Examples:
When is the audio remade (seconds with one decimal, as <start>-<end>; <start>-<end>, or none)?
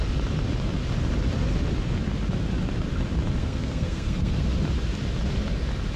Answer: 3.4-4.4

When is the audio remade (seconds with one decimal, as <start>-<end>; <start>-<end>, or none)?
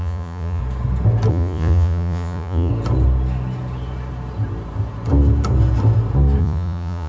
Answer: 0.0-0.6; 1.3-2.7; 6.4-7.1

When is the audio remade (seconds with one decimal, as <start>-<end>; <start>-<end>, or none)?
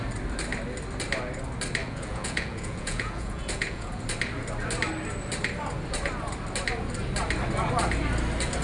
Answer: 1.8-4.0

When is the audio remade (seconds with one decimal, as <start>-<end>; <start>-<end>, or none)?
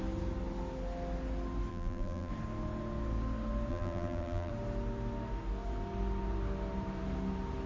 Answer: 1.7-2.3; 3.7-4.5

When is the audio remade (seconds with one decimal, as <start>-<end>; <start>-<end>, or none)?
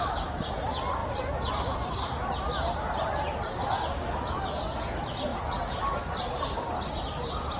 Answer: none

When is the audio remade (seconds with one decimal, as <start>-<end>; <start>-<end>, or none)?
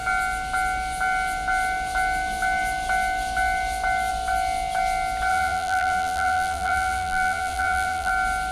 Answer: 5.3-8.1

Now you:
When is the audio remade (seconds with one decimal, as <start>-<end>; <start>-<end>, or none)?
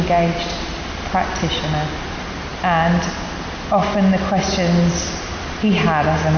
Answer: 5.0-5.6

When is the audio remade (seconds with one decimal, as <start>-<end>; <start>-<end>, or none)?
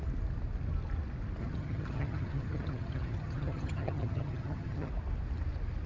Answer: 1.4-4.9